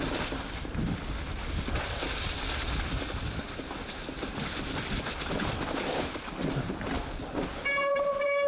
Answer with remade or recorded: recorded